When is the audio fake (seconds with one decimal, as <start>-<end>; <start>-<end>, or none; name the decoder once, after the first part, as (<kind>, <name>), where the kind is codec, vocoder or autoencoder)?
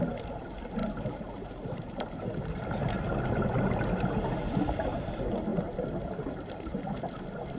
0.8-2.7 (vocoder, BigVGAN v2); 5.5-6.8